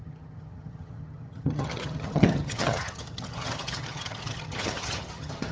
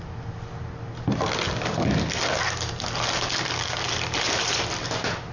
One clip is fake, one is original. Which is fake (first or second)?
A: first